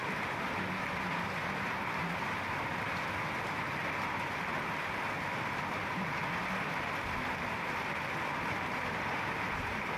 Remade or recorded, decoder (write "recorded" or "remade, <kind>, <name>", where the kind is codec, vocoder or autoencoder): recorded